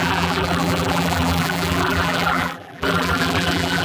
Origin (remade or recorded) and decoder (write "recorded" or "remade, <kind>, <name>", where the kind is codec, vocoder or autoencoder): remade, vocoder, BigVGAN v2